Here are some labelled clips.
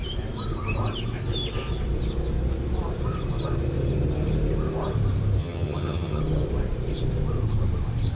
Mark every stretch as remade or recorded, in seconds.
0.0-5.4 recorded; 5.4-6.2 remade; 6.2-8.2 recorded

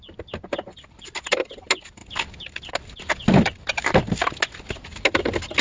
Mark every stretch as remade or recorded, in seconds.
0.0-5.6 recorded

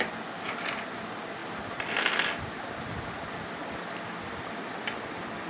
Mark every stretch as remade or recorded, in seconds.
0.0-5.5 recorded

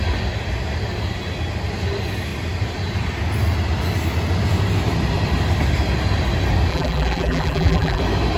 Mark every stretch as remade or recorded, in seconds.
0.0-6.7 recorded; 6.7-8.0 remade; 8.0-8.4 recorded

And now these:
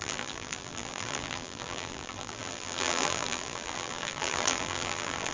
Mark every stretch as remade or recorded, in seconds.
0.0-5.3 remade